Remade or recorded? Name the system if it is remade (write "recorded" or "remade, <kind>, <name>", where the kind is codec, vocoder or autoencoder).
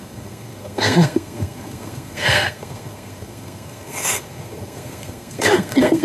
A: remade, codec, SNAC